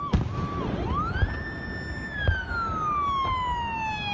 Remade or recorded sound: recorded